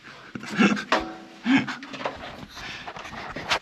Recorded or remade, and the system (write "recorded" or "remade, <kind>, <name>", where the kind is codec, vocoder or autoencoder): recorded